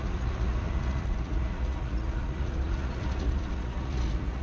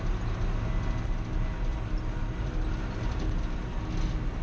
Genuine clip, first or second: second